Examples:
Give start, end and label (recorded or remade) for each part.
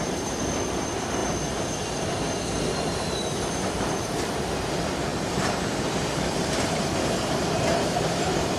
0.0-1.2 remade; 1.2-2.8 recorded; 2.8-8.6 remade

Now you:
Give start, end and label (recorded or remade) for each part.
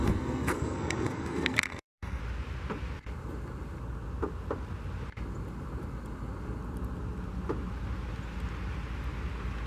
0.0-2.2 remade; 2.2-9.7 recorded